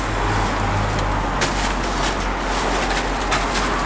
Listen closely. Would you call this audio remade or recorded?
recorded